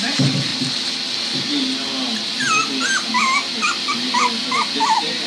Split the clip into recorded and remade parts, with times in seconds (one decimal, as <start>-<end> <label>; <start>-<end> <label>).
0.0-5.3 recorded